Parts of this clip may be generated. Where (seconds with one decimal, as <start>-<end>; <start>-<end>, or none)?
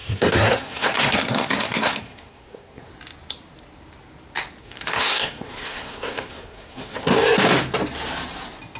0.0-2.9; 4.6-7.1